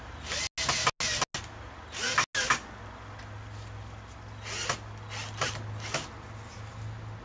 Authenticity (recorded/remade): recorded